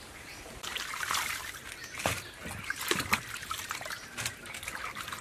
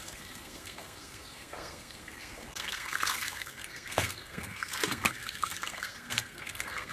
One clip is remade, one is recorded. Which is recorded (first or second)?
first